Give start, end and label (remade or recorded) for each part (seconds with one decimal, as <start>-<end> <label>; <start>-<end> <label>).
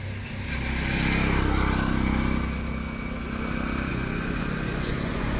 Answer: 0.0-3.9 recorded; 3.9-5.4 remade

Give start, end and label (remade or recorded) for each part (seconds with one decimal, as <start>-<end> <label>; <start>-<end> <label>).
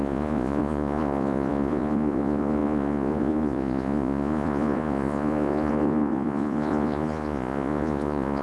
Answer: 0.0-8.4 remade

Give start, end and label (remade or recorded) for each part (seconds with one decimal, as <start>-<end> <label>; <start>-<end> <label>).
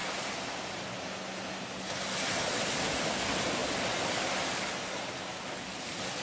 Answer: 0.0-6.2 recorded